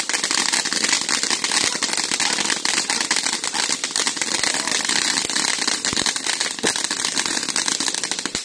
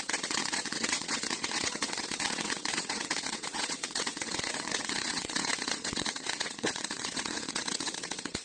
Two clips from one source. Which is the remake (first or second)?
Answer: second